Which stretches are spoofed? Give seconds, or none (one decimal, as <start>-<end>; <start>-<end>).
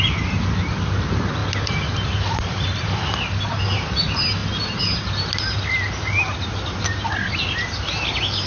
none